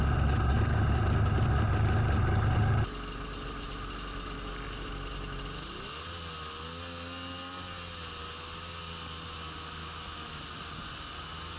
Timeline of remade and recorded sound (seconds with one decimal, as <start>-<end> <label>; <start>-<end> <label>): 0.0-9.8 recorded; 9.8-10.4 remade; 10.4-11.6 recorded